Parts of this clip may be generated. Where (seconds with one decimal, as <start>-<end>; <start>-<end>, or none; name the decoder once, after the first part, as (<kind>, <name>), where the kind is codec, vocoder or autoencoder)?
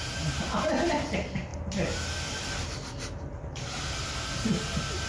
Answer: none